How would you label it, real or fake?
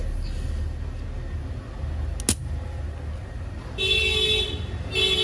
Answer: real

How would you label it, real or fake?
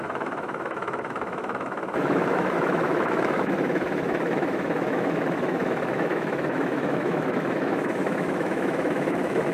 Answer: fake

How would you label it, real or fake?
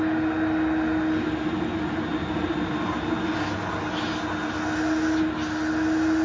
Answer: real